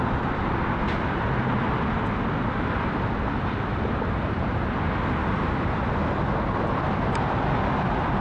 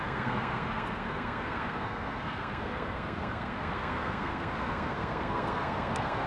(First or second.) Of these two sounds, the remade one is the second